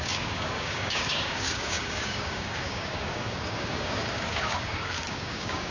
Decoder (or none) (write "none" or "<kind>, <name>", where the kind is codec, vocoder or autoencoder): codec, DAC